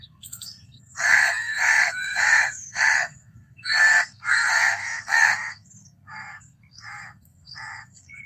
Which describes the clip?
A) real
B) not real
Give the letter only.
B